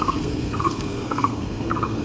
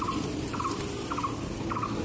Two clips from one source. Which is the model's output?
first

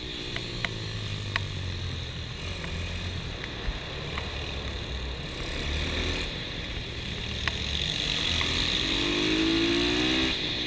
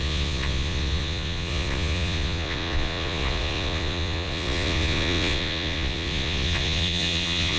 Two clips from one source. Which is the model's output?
second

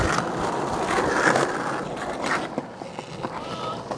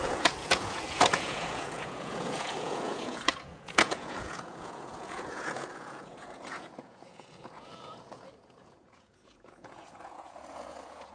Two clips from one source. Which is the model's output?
second